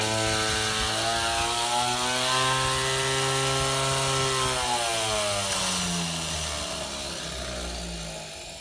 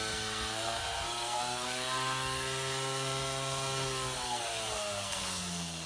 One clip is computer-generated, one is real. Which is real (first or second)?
first